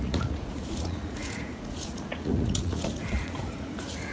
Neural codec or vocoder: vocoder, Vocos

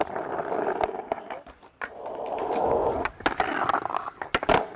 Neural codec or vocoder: none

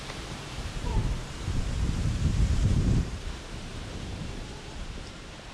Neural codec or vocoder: vocoder, BigVGAN v2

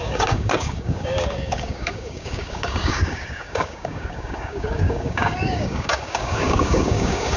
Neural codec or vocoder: codec, DAC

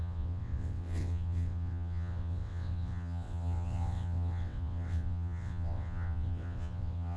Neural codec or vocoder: vocoder, WaveNeXt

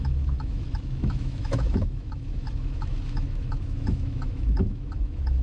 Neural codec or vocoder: autoencoder, DAC-VAE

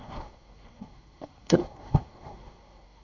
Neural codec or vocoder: codec, SNAC